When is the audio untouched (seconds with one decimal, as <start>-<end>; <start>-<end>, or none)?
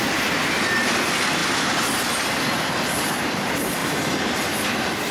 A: 0.0-3.8; 4.5-5.1